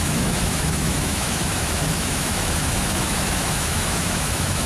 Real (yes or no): no